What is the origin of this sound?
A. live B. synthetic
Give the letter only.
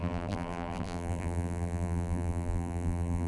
B